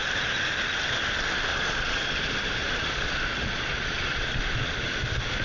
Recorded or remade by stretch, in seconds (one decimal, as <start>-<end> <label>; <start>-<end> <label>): 0.0-1.5 recorded; 1.5-2.1 remade; 2.1-2.6 recorded; 2.6-4.4 remade; 4.4-5.4 recorded